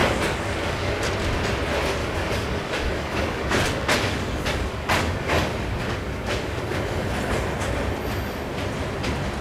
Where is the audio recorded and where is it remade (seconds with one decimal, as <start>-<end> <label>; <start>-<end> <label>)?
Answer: 0.0-1.0 remade; 1.0-2.0 recorded; 2.0-7.1 remade; 7.1-9.4 recorded